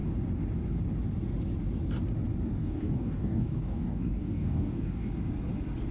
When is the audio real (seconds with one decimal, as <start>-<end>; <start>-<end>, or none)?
0.0-2.6; 5.1-5.9